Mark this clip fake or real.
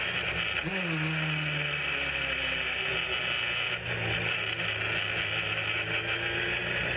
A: real